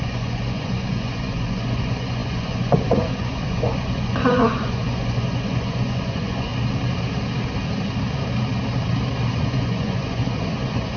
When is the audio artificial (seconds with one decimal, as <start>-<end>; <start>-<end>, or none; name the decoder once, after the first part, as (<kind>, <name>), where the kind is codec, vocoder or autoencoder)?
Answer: 0.0-6.5 (vocoder, Vocos); 9.3-11.0